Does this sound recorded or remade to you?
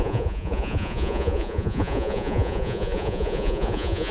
remade